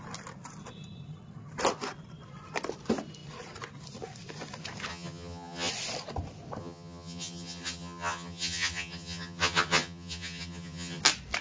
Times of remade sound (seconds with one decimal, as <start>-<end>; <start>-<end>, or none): 4.9-5.7; 6.6-11.0